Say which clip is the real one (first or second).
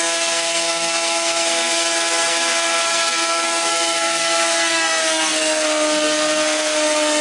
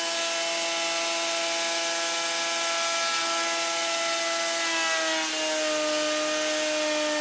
second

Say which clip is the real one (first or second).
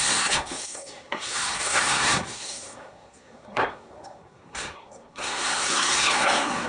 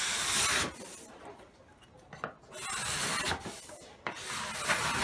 second